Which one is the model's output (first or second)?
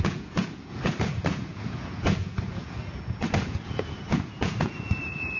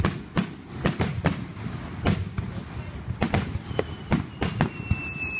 first